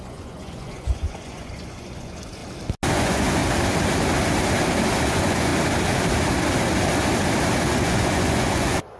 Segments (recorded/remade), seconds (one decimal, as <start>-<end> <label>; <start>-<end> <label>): 0.0-2.4 remade; 2.4-2.9 recorded; 2.9-3.4 remade; 3.4-5.0 recorded; 5.0-5.5 remade; 5.5-7.6 recorded; 7.6-9.0 remade